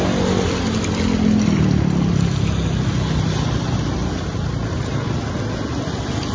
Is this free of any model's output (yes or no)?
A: yes